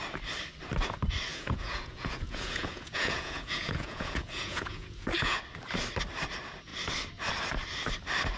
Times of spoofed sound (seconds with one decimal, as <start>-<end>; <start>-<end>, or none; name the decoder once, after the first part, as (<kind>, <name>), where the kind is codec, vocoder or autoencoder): 1.3-5.4 (vocoder, Vocos)